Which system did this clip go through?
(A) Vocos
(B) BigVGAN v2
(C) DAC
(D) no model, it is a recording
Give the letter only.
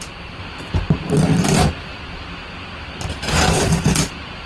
B